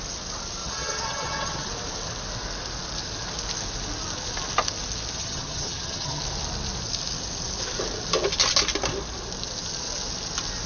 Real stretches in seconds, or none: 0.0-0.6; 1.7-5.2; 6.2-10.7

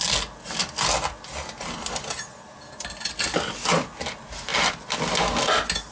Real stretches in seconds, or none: 0.0-5.9

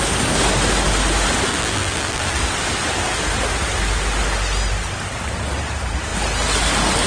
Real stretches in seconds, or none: 0.0-1.5; 2.4-7.1

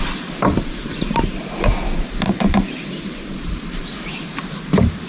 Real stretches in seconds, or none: none